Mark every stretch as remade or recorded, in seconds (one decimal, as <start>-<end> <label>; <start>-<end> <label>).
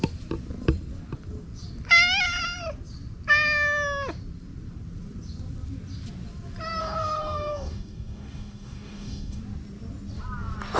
0.0-6.8 recorded; 6.8-9.4 remade; 9.4-10.8 recorded